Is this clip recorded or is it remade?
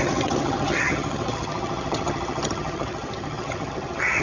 remade